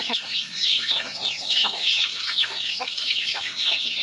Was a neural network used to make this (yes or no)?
yes